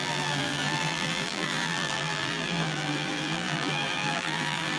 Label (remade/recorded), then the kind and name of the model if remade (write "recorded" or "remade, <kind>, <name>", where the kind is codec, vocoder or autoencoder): remade, vocoder, BigVGAN v2